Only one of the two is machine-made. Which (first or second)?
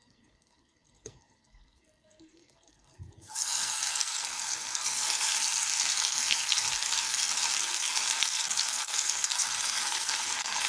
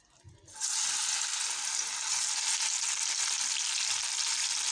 first